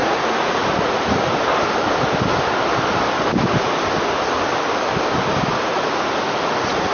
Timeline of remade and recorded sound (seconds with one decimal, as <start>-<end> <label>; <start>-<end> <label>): 0.0-1.4 remade; 1.4-5.5 recorded; 5.5-6.9 remade